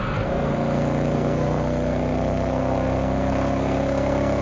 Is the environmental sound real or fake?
fake